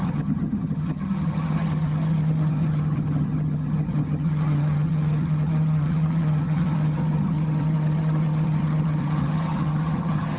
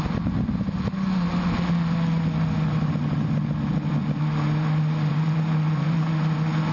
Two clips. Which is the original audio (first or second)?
second